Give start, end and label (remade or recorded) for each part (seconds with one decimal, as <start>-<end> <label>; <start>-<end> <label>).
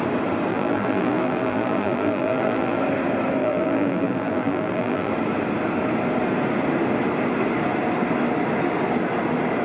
0.0-0.5 recorded; 0.5-2.8 remade; 2.8-3.4 recorded; 3.4-5.1 remade; 5.1-9.6 recorded